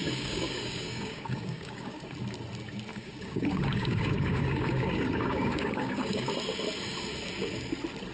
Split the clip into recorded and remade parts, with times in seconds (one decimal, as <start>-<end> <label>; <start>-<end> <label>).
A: 0.0-2.0 remade; 2.0-2.9 recorded; 2.9-6.3 remade; 6.3-8.1 recorded